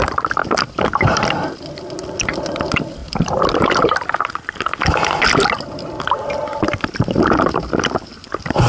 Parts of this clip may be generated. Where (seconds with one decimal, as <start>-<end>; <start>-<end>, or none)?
none